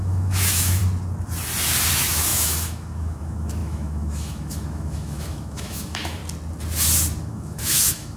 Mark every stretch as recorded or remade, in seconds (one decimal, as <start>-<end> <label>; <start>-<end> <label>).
0.0-0.8 remade; 0.8-1.9 recorded; 1.9-6.2 remade; 6.2-7.2 recorded; 7.2-8.2 remade